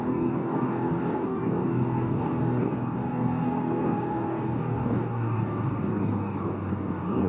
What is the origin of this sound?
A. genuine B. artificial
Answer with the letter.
B